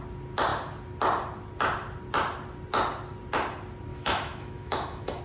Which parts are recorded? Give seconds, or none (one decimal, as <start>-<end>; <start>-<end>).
0.0-3.9